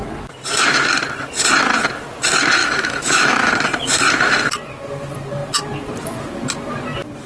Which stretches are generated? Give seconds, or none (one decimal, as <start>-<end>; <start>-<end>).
2.6-3.5